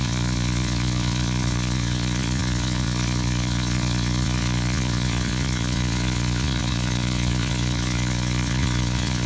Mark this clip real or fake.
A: fake